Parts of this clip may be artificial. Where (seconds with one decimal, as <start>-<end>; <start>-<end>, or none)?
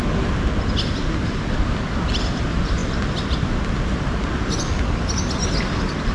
none